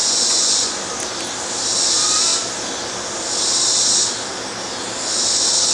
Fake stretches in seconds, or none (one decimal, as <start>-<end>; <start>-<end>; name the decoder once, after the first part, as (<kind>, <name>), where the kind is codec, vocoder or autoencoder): 0.0-0.8 (vocoder, Vocos)